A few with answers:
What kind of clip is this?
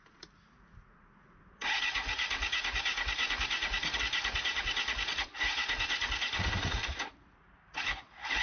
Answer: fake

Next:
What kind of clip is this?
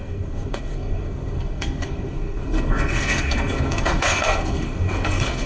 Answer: fake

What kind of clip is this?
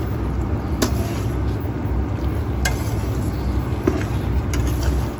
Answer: real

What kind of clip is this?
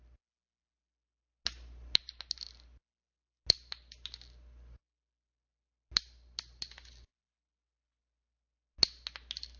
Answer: real